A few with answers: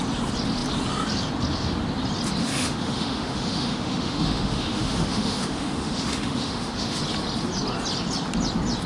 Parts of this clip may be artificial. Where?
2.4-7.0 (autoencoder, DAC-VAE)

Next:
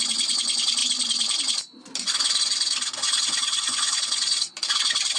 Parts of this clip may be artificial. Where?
3.0-4.5 (vocoder, Vocos)

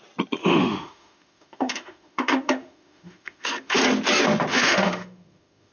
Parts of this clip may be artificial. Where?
0.4-3.8 (autoencoder, DAC-VAE); 4.5-5.7